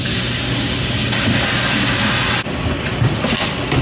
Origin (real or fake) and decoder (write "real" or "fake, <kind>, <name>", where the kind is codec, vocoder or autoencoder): real